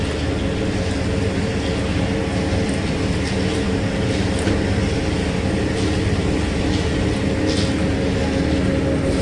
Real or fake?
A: real